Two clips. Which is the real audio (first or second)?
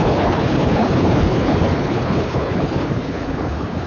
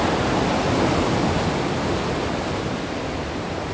second